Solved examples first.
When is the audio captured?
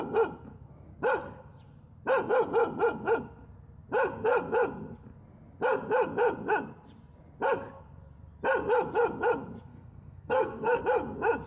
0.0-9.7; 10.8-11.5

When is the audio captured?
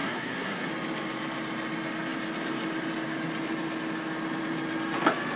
0.7-5.4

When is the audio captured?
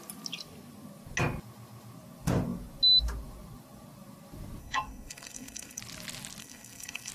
0.0-4.6; 5.8-6.4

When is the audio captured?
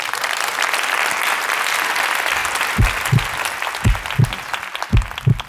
0.0-5.5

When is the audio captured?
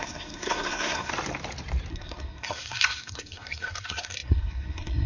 1.1-1.9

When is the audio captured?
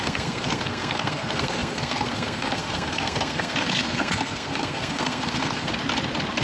5.7-6.4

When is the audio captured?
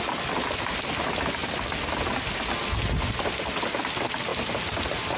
0.0-5.2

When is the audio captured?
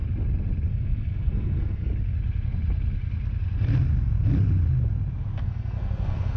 0.0-0.7; 1.9-5.4